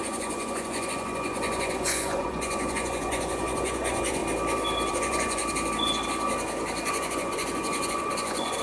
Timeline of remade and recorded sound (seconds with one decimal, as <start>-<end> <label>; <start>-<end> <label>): 0.0-4.2 remade; 4.2-4.9 recorded; 4.9-5.4 remade; 5.4-6.9 recorded; 6.9-8.6 remade